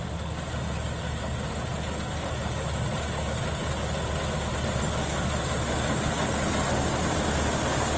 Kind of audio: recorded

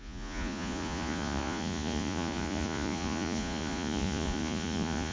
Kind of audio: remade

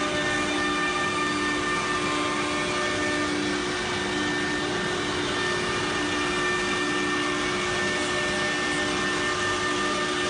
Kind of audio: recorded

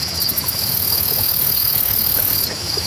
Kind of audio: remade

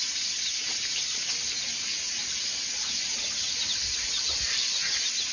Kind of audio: recorded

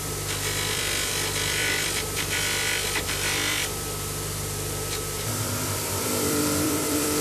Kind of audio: remade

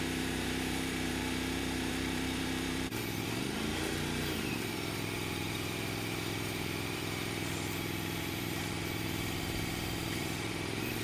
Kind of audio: remade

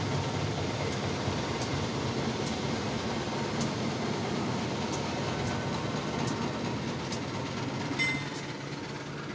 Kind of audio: recorded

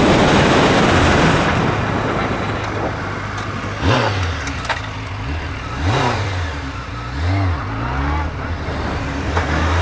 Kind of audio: recorded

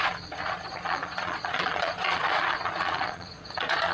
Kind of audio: remade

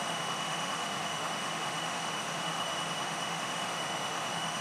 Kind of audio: remade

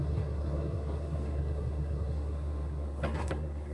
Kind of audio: remade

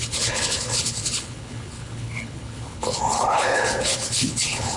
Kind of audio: remade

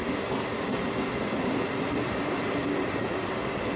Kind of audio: recorded